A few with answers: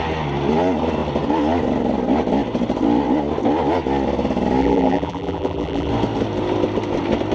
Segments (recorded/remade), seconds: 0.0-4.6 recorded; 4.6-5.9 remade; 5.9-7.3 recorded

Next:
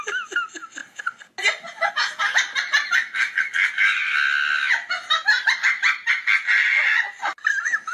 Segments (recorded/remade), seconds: 0.0-7.9 recorded

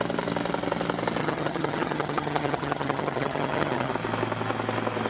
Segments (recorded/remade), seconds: 0.0-1.2 recorded; 1.2-3.9 remade; 3.9-5.1 recorded

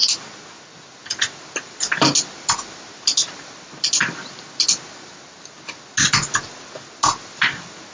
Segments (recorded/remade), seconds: 0.0-7.9 recorded

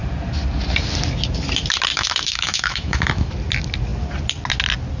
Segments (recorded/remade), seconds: 0.0-1.9 recorded; 1.9-3.3 remade; 3.3-5.0 recorded

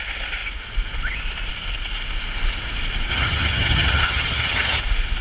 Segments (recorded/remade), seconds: 0.0-3.1 recorded; 3.1-4.8 remade; 4.8-5.2 recorded